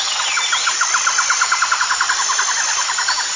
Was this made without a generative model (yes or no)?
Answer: yes